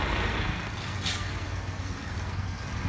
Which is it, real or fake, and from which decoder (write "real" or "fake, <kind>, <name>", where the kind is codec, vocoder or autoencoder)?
fake, codec, SNAC